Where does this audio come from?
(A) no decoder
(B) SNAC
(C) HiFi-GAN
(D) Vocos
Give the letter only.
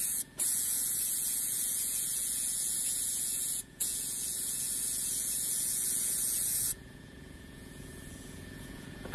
D